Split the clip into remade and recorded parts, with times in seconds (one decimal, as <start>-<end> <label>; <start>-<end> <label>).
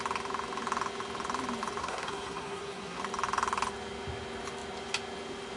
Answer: 0.0-1.8 recorded; 1.8-3.0 remade; 3.0-5.6 recorded